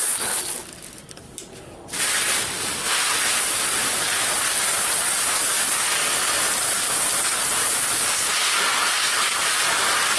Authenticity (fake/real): real